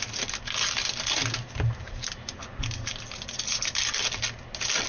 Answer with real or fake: real